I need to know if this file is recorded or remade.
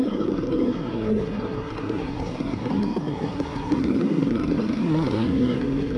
remade